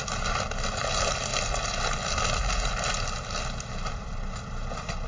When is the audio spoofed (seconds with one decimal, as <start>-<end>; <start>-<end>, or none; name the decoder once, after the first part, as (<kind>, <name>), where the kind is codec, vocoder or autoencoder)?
none